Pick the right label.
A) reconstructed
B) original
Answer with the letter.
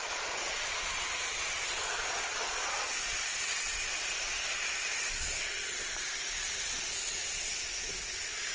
A